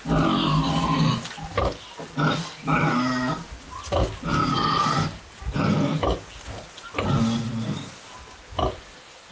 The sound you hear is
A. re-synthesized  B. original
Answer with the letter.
B